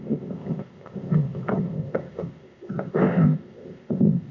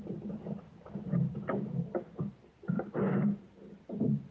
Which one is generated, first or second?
first